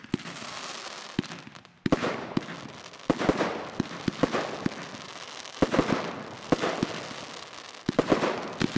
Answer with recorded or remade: recorded